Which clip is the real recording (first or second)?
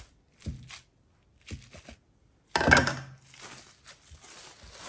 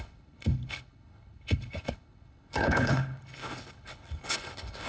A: first